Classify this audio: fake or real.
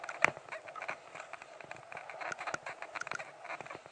real